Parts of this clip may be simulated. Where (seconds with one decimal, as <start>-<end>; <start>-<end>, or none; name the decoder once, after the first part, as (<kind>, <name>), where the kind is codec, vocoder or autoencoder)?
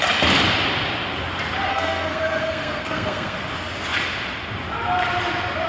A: 1.7-3.4 (codec, SNAC)